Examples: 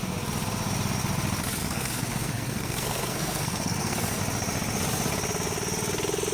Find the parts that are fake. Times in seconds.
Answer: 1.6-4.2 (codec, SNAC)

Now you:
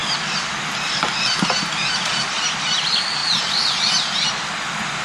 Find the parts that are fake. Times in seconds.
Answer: none

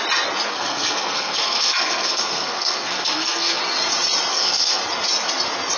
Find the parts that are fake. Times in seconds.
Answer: 0.5-3.6 (codec, SNAC); 4.3-4.8

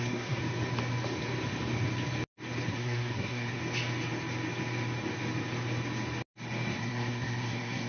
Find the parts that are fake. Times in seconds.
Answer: 0.0-0.4 (codec, SNAC); 2.7-3.6; 6.8-7.9

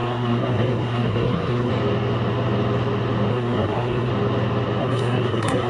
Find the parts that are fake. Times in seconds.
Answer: 0.0-1.7 (codec, SNAC); 3.3-4.1; 4.8-5.7

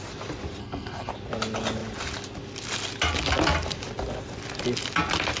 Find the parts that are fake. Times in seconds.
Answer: 0.6-1.1 (codec, SNAC)